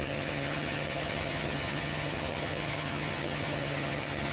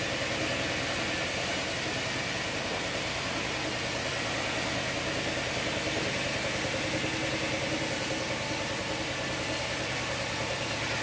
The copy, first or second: first